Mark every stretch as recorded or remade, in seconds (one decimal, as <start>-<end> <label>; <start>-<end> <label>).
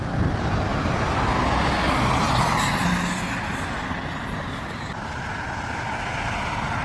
0.0-0.7 recorded; 0.7-1.2 remade; 1.2-6.8 recorded